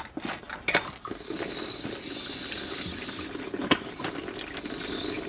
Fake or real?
real